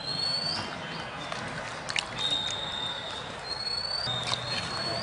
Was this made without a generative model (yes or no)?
yes